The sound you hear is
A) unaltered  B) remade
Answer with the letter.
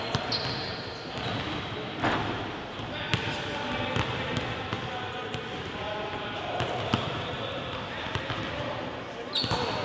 A